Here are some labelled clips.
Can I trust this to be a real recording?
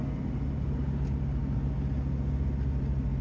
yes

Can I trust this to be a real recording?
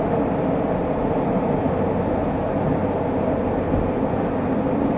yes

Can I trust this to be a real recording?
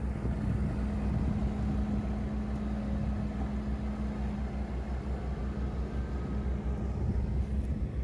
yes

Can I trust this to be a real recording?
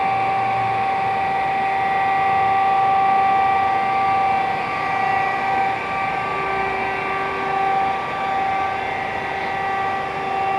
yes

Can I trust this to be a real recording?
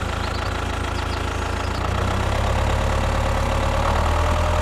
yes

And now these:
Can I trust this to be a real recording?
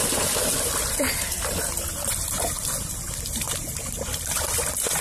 no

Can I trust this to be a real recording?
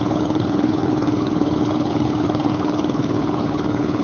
no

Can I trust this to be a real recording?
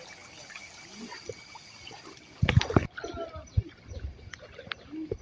yes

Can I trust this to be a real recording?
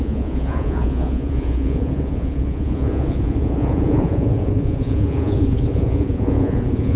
no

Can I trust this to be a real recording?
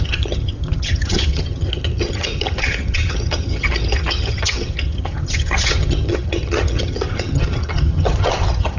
no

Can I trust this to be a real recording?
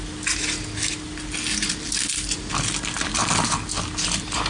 yes